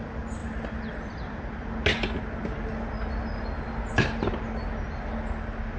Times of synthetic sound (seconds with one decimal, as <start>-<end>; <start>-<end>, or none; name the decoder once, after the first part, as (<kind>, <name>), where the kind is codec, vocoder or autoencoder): none